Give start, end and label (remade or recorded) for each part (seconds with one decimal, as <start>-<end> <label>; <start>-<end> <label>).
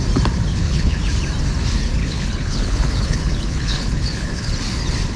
0.0-0.5 recorded; 0.5-1.0 remade; 1.0-2.0 recorded; 2.0-4.5 remade; 4.5-5.2 recorded